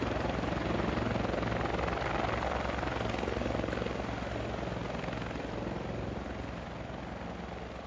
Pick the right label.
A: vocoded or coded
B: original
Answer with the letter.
B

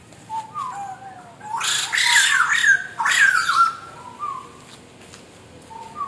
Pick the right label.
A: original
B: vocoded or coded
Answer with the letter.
A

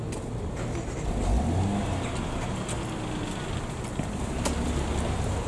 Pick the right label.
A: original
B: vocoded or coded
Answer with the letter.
A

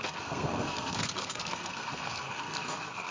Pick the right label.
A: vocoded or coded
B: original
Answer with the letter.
A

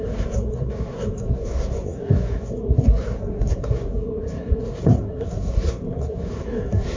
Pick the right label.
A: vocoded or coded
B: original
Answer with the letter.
A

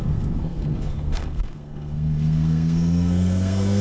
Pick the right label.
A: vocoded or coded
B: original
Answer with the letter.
A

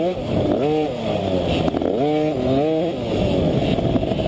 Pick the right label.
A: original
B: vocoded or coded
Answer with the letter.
A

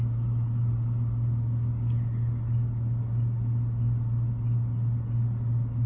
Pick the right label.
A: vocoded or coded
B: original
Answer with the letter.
B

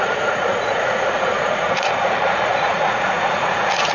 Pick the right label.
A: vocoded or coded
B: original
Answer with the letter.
A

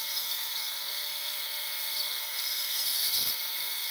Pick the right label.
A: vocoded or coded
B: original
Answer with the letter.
A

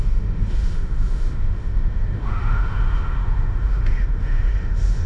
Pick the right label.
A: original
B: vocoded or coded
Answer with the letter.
B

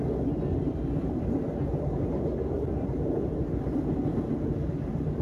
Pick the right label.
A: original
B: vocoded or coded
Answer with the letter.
A